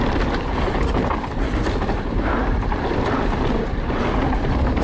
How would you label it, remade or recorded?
recorded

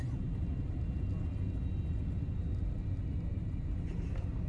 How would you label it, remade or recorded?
recorded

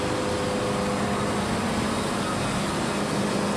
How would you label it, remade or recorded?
recorded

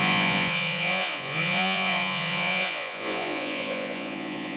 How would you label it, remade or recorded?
remade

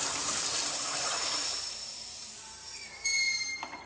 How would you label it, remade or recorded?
remade